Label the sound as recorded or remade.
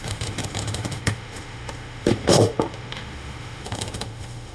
remade